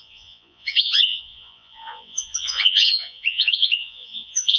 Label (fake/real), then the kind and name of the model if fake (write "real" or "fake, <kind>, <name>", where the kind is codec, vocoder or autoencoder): fake, vocoder, Vocos